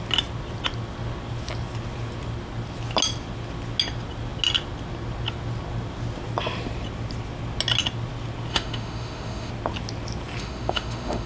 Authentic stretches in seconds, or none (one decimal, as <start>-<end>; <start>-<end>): 0.0-8.5; 9.5-10.4